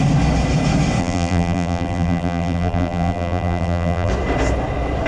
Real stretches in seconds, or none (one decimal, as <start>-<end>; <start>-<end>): 0.0-1.0; 4.1-5.1